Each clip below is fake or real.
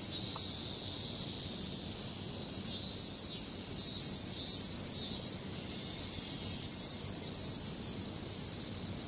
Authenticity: real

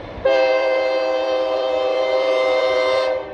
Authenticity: fake